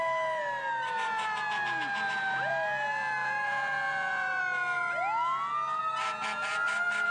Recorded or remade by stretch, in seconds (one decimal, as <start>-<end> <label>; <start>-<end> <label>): 0.0-3.2 recorded; 3.2-4.4 remade; 4.4-7.1 recorded